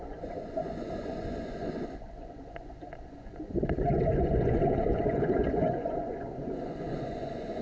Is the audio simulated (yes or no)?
yes